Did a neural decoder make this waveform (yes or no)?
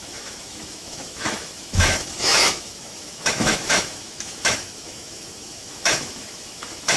yes